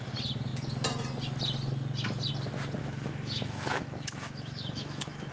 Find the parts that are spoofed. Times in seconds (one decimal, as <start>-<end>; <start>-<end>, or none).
2.8-5.3